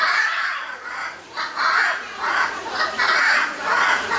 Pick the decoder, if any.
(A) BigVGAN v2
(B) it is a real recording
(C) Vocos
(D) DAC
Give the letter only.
C